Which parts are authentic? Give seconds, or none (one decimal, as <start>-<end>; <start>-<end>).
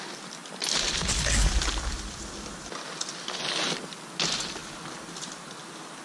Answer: 0.0-6.0